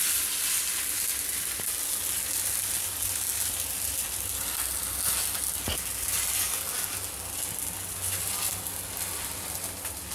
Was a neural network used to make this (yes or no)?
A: no